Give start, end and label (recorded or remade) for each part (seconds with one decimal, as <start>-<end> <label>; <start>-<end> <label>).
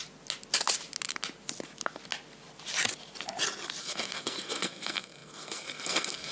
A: 0.0-3.8 recorded; 3.8-6.3 remade